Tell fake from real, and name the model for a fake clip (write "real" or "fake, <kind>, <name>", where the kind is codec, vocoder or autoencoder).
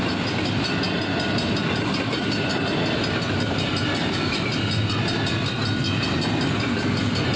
real